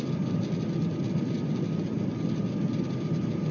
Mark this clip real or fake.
real